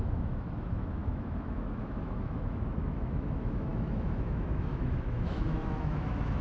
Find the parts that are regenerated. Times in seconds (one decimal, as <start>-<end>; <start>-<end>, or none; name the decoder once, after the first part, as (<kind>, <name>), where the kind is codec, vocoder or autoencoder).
0.0-6.4 (autoencoder, DAC-VAE)